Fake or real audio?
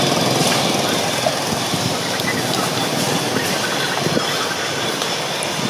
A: real